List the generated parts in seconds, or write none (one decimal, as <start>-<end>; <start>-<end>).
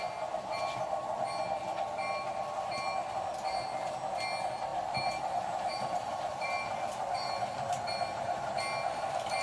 4.7-8.5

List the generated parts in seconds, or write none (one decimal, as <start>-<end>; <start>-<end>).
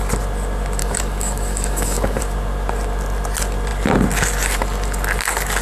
0.8-2.2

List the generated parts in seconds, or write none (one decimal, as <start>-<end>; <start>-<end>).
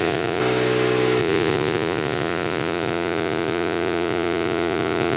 0.0-0.4; 1.2-5.2